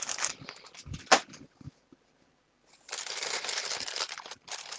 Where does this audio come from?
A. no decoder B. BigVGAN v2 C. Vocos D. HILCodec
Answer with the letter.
A